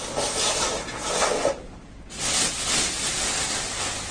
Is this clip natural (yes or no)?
yes